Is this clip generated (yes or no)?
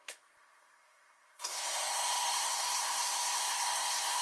yes